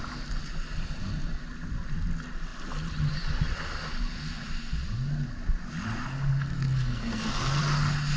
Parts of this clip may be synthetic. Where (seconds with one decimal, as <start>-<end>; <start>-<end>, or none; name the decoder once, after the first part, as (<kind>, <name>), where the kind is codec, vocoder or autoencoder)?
6.1-7.6 (codec, SNAC)